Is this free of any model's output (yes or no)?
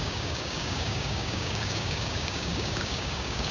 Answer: no